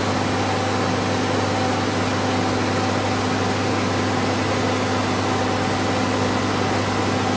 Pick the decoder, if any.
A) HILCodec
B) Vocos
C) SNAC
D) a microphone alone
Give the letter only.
D